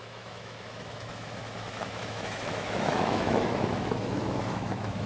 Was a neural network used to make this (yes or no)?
yes